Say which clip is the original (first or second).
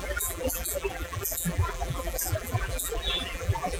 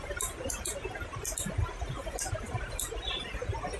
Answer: second